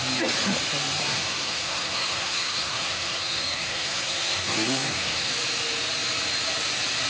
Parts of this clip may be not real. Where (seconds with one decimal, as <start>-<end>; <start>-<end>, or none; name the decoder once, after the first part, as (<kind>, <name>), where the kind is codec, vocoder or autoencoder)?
1.0-5.3 (codec, SNAC)